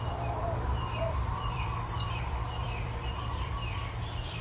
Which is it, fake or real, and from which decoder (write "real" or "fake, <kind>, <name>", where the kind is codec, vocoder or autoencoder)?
fake, vocoder, BigVGAN v2